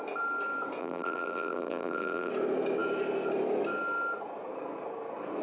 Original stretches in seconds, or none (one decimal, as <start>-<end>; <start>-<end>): 0.0-0.8; 2.3-5.4